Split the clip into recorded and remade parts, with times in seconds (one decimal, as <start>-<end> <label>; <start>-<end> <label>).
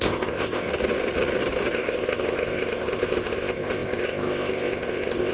0.0-0.7 remade; 0.7-1.7 recorded; 1.7-5.3 remade